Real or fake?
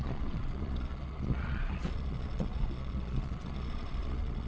fake